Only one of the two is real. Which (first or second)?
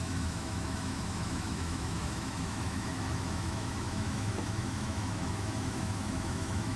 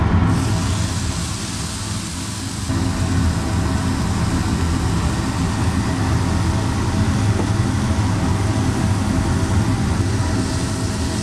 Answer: second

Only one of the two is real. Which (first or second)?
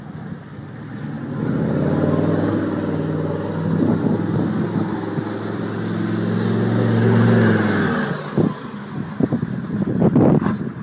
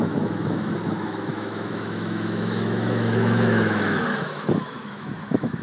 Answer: first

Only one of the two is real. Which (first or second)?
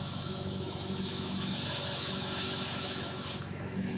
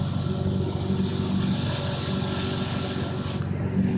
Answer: second